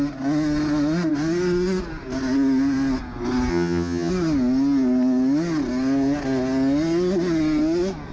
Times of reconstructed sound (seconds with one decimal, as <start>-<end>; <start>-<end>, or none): 3.5-4.1